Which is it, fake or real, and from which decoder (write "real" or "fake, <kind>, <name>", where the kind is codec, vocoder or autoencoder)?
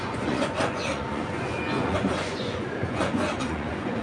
fake, vocoder, Vocos